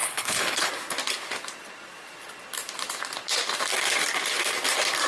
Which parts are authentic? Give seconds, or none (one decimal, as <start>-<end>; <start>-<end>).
0.7-5.1